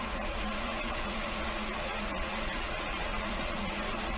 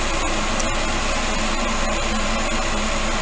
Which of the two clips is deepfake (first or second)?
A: first